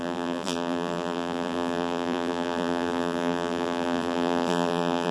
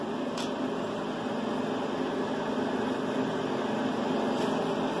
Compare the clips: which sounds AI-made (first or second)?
first